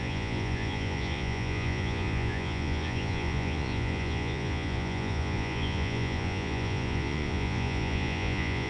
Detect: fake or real fake